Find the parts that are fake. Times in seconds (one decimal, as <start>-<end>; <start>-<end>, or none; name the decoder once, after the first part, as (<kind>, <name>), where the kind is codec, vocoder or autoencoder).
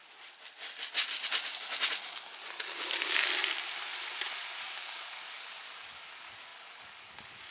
4.4-7.5 (codec, DAC)